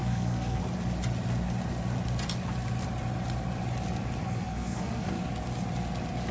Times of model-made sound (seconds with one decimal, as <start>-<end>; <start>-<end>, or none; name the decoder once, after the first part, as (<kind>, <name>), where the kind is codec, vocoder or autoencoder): 0.0-0.6 (codec, SNAC); 4.2-5.1